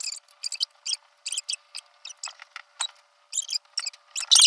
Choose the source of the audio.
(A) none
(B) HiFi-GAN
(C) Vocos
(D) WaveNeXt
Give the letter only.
A